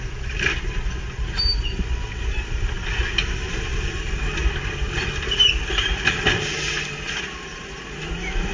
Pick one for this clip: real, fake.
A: real